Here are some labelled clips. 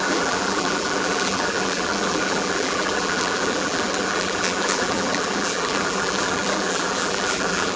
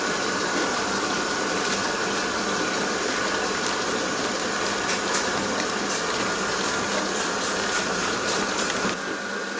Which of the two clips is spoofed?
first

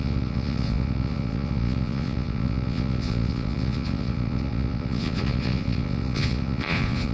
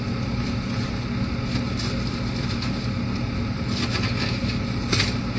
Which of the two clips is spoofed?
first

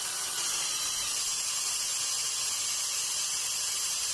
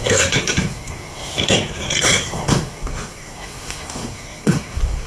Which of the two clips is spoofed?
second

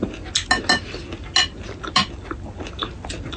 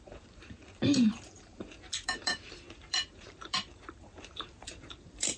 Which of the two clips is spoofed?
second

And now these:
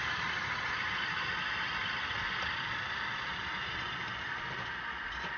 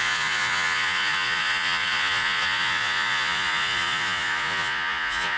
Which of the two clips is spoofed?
second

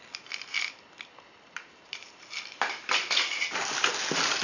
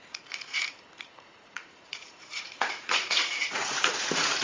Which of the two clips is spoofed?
second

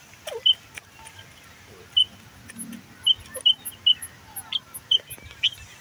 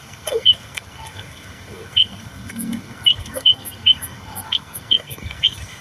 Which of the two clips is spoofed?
second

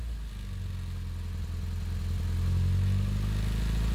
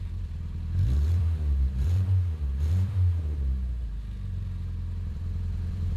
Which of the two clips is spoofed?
second